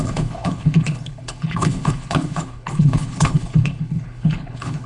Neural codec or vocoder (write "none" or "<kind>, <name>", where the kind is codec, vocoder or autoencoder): codec, HILCodec